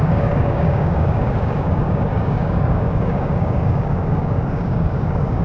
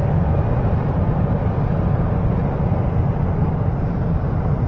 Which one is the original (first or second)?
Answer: second